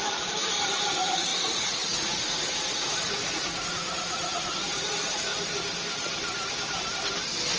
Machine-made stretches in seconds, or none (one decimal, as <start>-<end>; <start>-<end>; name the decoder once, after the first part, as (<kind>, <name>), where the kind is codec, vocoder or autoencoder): 0.0-5.3 (vocoder, Vocos)